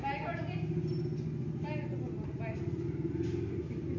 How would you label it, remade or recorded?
recorded